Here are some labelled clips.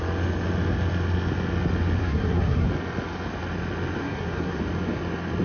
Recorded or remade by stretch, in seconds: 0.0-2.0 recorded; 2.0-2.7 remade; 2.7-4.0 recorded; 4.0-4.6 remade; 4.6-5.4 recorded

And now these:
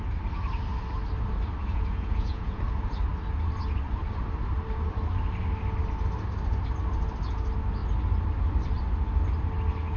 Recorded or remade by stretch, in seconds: 0.0-1.6 recorded; 1.6-2.6 remade; 2.6-10.0 recorded

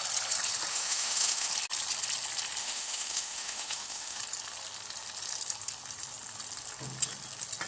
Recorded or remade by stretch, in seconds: 0.0-0.7 recorded; 0.7-1.5 remade; 1.5-2.6 recorded; 2.6-4.2 remade; 4.2-7.7 recorded

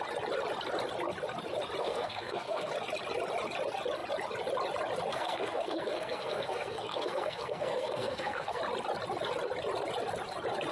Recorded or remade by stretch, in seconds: 0.0-1.8 recorded; 1.8-2.7 remade; 2.7-5.1 recorded; 5.1-8.6 remade; 8.6-10.7 recorded

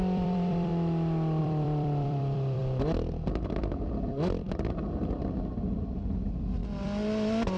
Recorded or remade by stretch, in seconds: 0.0-0.7 remade; 0.7-1.4 recorded; 1.4-2.6 remade; 2.6-3.6 recorded; 3.6-7.6 remade

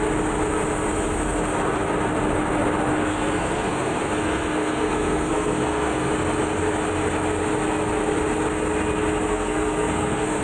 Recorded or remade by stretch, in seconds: 0.0-2.9 recorded; 2.9-6.1 remade; 6.1-9.3 recorded; 9.3-10.4 remade